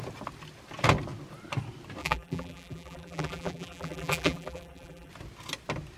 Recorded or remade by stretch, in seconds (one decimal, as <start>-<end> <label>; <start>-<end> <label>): 0.0-2.0 recorded; 2.0-5.1 remade; 5.1-6.0 recorded